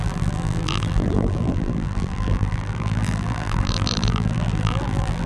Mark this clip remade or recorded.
remade